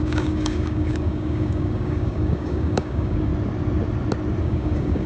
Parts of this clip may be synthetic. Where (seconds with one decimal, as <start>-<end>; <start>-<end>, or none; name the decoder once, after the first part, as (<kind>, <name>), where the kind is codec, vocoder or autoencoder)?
0.0-3.3 (codec, DAC); 4.4-5.1